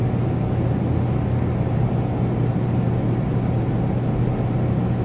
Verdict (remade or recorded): recorded